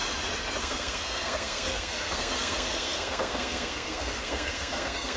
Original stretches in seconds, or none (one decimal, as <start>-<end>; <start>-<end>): 0.0-0.6

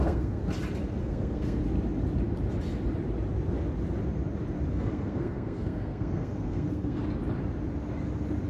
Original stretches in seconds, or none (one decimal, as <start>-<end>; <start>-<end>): 0.4-1.0; 1.6-4.7; 7.0-8.5

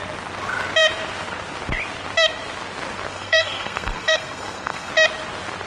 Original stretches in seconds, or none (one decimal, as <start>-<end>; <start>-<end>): 0.0-3.1; 4.9-5.7

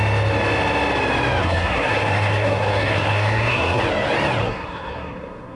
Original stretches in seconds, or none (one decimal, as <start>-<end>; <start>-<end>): 0.0-1.4; 3.8-4.4